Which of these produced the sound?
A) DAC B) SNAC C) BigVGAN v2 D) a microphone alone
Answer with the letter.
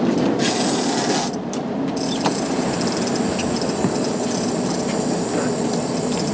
D